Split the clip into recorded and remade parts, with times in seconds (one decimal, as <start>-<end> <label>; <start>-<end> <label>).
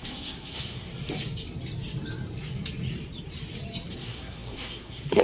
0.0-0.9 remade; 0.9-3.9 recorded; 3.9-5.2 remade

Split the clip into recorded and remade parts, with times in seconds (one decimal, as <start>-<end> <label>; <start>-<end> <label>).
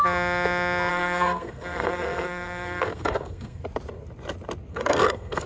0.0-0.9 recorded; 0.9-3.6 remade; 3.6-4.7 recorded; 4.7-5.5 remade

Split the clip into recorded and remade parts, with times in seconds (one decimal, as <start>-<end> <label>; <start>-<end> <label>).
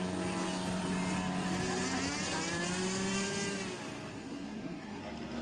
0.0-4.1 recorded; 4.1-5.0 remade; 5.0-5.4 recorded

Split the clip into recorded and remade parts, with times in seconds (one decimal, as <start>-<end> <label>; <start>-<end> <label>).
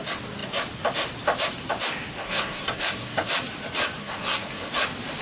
0.0-2.2 recorded; 2.2-3.3 remade; 3.3-4.0 recorded; 4.0-4.7 remade; 4.7-5.2 recorded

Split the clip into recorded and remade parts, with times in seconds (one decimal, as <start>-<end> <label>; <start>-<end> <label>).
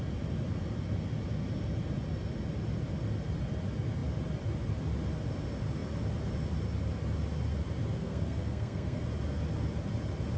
0.0-8.0 recorded; 8.0-9.0 remade; 9.0-10.4 recorded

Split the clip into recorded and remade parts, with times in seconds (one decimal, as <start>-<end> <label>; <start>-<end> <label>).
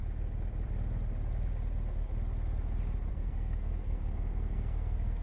0.0-3.1 recorded; 3.1-5.2 remade